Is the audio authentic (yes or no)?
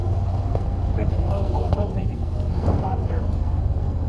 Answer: no